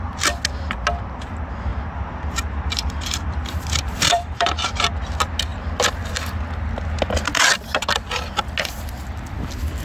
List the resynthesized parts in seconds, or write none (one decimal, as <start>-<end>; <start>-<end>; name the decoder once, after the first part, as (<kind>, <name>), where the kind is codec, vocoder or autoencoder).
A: 1.7-4.9 (vocoder, BigVGAN v2)